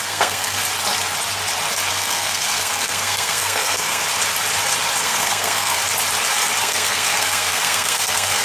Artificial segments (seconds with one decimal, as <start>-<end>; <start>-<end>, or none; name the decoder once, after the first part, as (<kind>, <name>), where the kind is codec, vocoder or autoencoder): 0.0-0.6 (codec, SNAC); 1.9-4.0; 5.0-5.8; 6.6-8.4